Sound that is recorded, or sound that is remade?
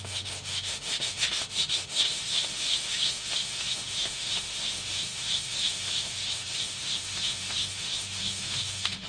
remade